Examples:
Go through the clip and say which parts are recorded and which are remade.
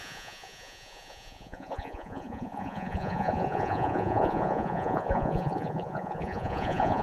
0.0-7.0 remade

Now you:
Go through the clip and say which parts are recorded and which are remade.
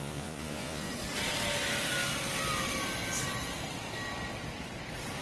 0.0-0.9 remade; 0.9-5.2 recorded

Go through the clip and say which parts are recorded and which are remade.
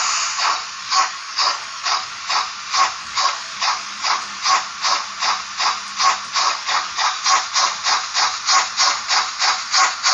0.0-0.8 recorded; 0.8-2.2 remade; 2.2-3.0 recorded; 3.0-4.4 remade; 4.4-6.4 recorded; 6.4-7.2 remade; 7.2-10.1 recorded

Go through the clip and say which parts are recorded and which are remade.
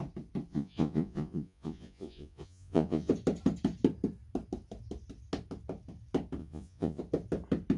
0.0-0.5 recorded; 0.5-3.1 remade; 3.1-6.4 recorded; 6.4-7.0 remade; 7.0-7.8 recorded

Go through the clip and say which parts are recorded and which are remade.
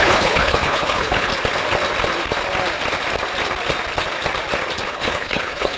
0.0-1.3 remade; 1.3-4.8 recorded; 4.8-5.8 remade